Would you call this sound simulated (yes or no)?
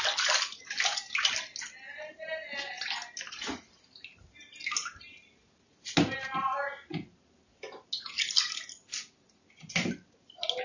no